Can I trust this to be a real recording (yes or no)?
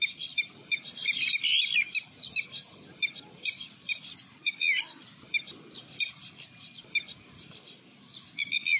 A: yes